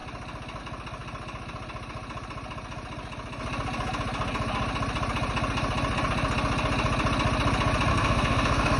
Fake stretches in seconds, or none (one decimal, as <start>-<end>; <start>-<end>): 7.9-8.8